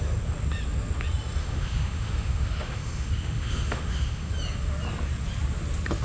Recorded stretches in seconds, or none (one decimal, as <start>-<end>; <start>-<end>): 0.0-1.4; 4.3-6.0